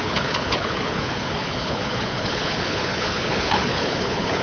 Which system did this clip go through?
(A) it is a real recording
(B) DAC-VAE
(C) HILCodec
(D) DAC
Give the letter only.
C